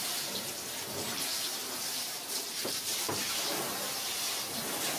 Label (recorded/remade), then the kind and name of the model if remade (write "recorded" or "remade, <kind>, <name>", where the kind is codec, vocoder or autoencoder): remade, vocoder, BigVGAN v2